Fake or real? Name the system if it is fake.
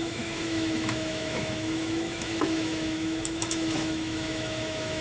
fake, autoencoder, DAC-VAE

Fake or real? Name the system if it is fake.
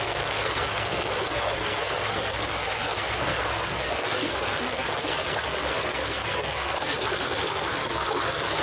fake, codec, SNAC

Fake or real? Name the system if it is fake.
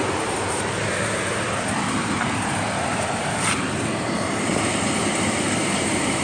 fake, vocoder, BigVGAN v2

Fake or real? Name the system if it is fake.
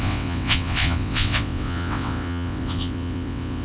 fake, vocoder, WaveNeXt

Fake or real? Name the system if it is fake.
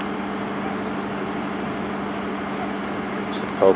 real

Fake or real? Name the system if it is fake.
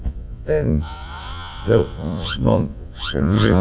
fake, vocoder, Vocos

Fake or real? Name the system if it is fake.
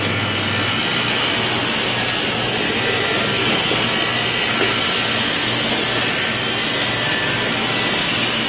real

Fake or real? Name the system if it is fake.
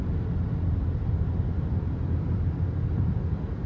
real